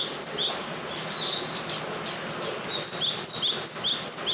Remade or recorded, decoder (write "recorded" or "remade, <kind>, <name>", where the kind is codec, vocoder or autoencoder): recorded